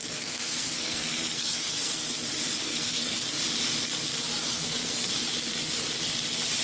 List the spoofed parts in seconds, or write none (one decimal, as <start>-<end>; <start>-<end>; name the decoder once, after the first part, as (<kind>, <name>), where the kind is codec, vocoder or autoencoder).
0.0-2.2 (codec, SNAC); 2.6-3.2; 4.4-5.1

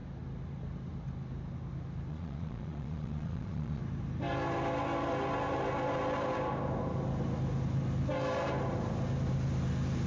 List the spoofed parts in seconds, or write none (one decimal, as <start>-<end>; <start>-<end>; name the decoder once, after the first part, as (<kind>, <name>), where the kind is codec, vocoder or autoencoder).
2.1-3.8 (vocoder, Vocos)

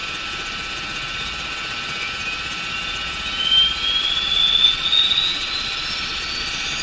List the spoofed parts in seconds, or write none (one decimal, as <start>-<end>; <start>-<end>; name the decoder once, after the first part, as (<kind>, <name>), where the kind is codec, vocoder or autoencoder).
4.0-6.8 (vocoder, Vocos)

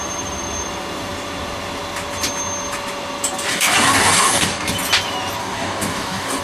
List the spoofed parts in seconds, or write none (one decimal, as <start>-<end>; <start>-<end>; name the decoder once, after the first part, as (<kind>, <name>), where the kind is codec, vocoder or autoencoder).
3.5-4.7 (codec, DAC); 5.4-6.4

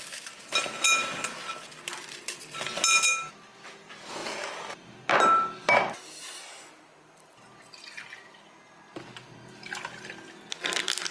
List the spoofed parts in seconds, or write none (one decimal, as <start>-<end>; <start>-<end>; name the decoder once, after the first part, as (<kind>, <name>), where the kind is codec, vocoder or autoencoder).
none

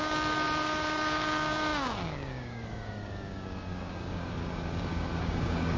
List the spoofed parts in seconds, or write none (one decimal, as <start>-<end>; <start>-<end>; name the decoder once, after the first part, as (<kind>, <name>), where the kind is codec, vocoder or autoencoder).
0.0-5.8 (codec, DAC)

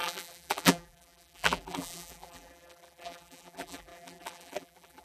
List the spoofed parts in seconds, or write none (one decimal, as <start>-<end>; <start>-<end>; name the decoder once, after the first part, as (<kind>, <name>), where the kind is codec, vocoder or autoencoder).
0.0-5.0 (vocoder, BigVGAN v2)